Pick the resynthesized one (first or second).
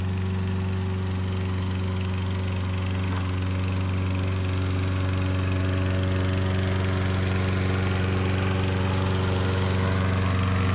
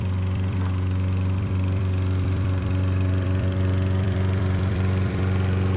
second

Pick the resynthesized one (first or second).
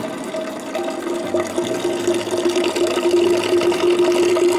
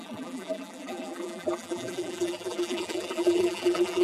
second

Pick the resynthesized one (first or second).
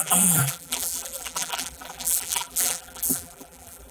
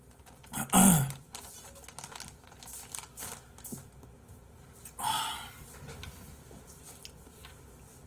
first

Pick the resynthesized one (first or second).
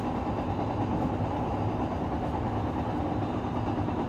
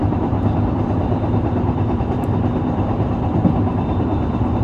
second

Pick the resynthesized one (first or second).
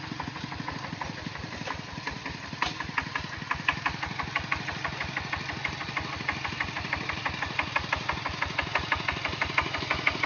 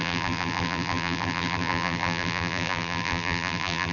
second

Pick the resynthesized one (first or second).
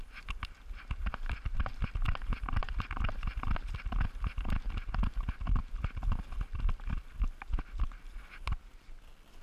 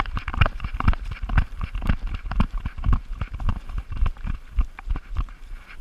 second